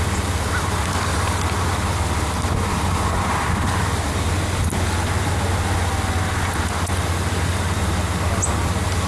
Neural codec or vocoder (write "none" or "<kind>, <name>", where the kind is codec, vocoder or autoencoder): none